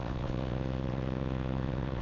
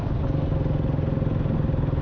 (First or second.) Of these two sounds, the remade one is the first